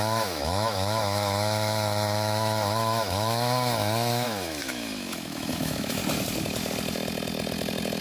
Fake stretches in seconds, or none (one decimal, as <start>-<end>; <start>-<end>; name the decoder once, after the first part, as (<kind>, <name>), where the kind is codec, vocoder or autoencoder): 0.0-6.0 (autoencoder, DAC-VAE)